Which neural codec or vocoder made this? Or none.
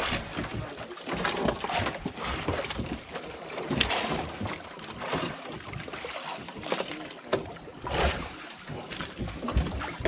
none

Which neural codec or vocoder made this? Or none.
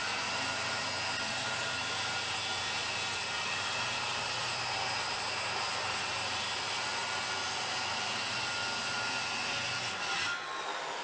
none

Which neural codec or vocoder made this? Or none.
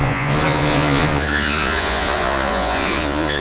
vocoder, Vocos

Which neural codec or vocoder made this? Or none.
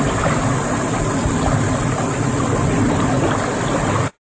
none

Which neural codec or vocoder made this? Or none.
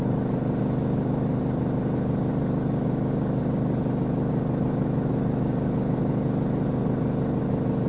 none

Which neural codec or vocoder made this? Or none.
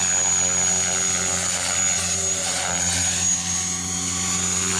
none